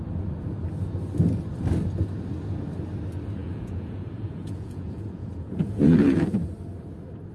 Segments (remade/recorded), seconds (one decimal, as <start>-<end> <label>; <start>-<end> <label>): 0.0-3.4 recorded; 3.4-6.4 remade; 6.4-7.3 recorded